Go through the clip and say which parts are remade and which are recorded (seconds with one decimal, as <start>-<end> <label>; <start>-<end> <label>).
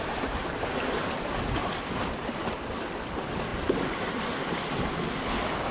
0.0-5.7 recorded